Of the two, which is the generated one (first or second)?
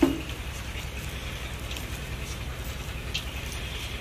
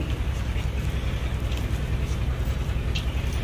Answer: first